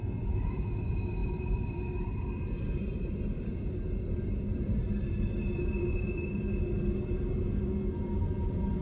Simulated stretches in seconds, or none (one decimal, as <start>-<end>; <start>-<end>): 1.2-2.3; 2.8-7.0